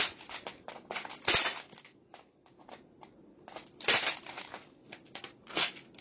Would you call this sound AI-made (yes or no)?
no